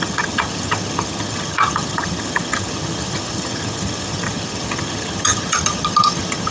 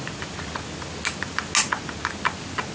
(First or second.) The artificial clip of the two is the first